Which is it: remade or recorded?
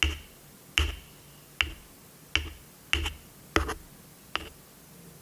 recorded